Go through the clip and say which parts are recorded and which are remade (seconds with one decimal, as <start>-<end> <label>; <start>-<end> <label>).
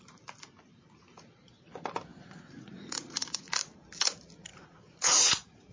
0.0-2.1 recorded; 2.1-3.5 remade; 3.5-4.5 recorded; 4.5-5.7 remade